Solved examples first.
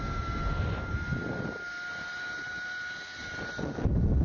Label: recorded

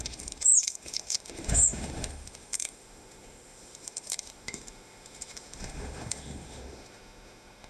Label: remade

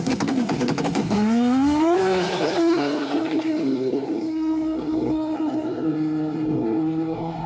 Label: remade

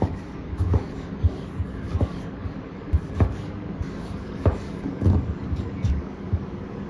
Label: remade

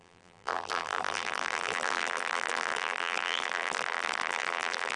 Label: remade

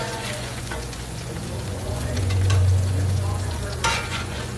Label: remade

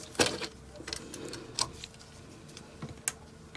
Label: recorded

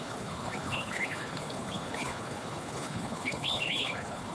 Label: remade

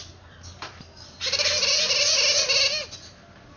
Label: recorded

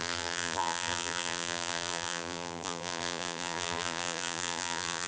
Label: remade